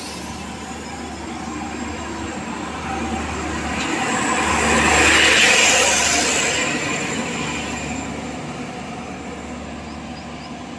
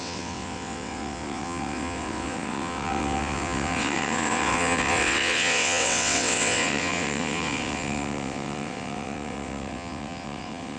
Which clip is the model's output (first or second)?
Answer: second